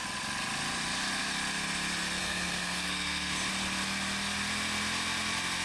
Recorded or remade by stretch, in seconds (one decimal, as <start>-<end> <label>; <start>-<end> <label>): 0.0-2.2 recorded; 2.2-3.5 remade; 3.5-5.6 recorded

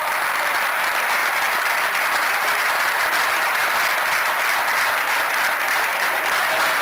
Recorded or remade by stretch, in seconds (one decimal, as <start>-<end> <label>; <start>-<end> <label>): 0.0-1.2 recorded; 1.2-1.7 remade; 1.7-5.9 recorded; 5.9-6.8 remade

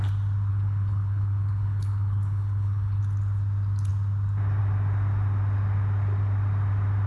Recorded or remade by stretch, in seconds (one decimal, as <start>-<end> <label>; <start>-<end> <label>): 0.0-0.5 recorded; 0.5-3.0 remade; 3.0-7.1 recorded

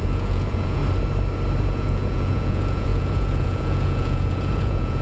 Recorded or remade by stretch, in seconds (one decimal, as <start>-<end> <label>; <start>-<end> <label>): 0.0-0.8 remade; 0.8-1.6 recorded; 1.6-5.0 remade

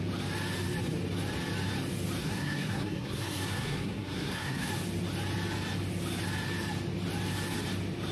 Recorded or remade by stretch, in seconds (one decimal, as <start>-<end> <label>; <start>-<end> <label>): 0.0-2.2 recorded; 2.2-4.7 remade; 4.7-8.1 recorded

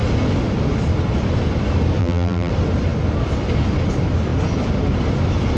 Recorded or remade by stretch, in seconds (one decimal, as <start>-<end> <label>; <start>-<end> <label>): 0.0-2.0 recorded; 2.0-2.5 remade; 2.5-5.6 recorded

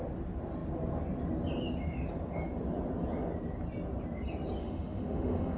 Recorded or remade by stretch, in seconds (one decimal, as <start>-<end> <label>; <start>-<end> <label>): 0.0-4.6 recorded; 4.6-5.6 remade